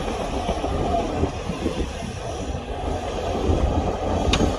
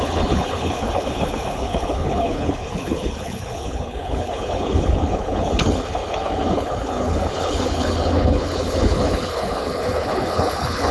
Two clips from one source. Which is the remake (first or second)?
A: second